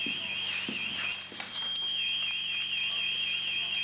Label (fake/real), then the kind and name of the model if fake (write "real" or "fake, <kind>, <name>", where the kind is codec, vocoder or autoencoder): real